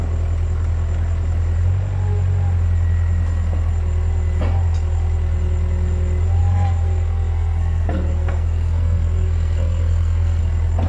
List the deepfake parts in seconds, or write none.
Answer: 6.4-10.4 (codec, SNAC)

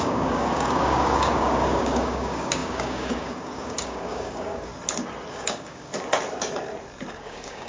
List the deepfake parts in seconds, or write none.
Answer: 0.0-4.7 (codec, DAC); 5.3-5.9; 7.1-7.7

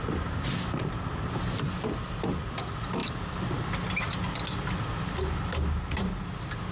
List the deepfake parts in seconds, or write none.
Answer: none